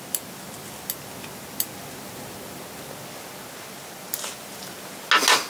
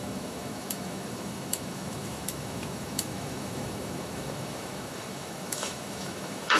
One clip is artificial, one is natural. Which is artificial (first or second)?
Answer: second